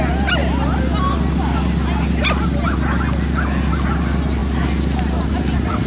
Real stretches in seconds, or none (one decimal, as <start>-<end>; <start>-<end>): 0.0-5.9